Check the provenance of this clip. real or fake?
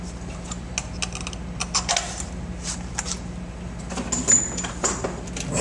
real